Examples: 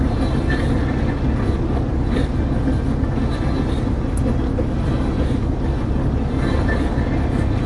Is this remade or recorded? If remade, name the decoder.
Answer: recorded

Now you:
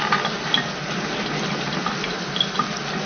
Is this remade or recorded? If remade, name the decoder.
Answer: recorded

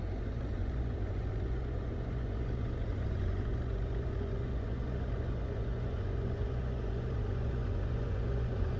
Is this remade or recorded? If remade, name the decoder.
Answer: remade, vocoder, Vocos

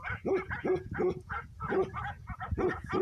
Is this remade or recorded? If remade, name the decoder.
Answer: remade, vocoder, Vocos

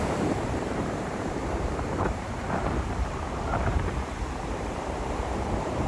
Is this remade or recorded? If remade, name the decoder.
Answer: remade, vocoder, BigVGAN v2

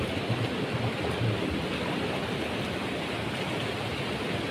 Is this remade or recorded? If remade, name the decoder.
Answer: recorded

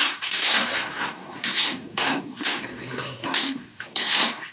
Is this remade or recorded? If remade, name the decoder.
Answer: remade, codec, SNAC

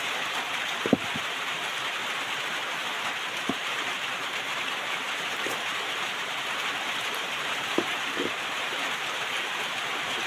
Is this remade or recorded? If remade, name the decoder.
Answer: remade, vocoder, BigVGAN v2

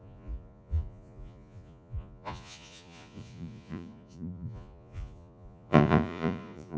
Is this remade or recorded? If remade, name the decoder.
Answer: remade, vocoder, Vocos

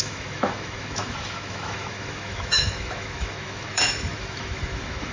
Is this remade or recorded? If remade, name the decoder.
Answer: remade, autoencoder, DAC-VAE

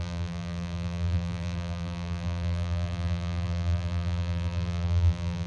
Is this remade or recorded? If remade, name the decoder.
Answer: remade, vocoder, BigVGAN v2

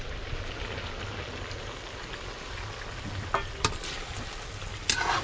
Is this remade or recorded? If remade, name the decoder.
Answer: recorded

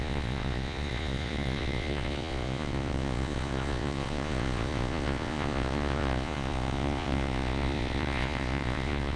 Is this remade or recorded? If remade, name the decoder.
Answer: remade, vocoder, Vocos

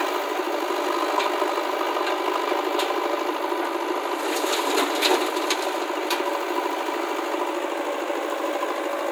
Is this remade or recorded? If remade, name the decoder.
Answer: recorded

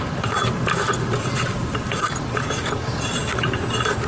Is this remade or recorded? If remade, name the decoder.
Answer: remade, vocoder, BigVGAN v2